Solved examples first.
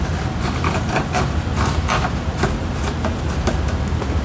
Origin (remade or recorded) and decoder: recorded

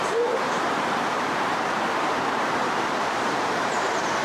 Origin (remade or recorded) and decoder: remade, vocoder, BigVGAN v2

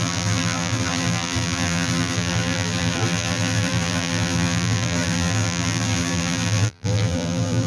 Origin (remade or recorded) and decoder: remade, vocoder, BigVGAN v2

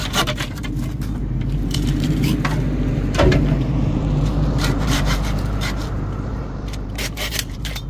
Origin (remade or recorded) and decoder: remade, vocoder, BigVGAN v2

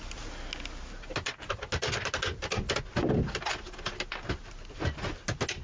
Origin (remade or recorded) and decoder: recorded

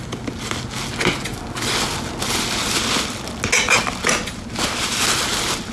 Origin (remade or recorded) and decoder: recorded